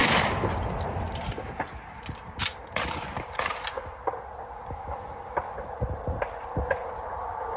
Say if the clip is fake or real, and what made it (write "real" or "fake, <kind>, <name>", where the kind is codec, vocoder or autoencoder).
real